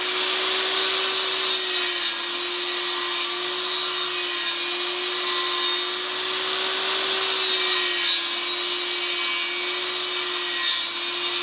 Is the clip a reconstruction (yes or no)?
no